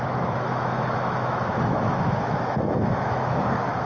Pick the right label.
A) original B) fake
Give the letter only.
B